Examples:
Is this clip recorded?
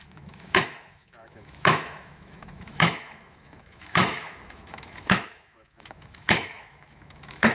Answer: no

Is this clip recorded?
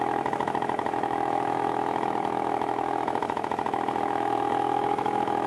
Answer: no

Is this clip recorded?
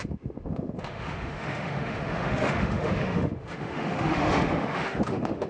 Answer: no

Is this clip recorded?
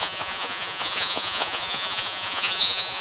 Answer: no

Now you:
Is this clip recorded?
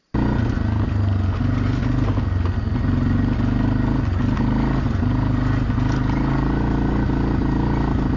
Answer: yes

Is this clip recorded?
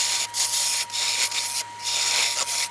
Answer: yes